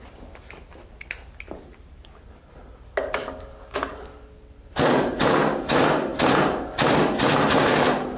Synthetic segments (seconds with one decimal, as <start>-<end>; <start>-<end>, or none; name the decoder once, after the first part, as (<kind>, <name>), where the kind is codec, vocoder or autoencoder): 3.2-4.4 (codec, DAC)